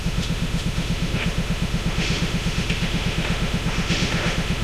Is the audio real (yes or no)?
no